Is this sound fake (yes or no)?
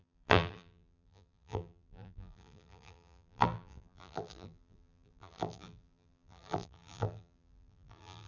yes